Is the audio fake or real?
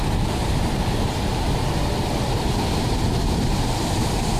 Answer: real